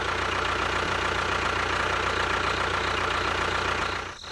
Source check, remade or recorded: recorded